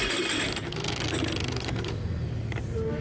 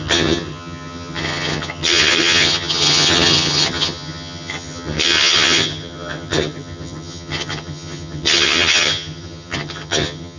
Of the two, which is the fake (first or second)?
second